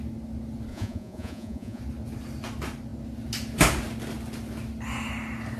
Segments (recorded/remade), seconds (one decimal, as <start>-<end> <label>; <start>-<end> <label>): 0.0-0.7 recorded; 0.7-1.8 remade; 1.8-5.6 recorded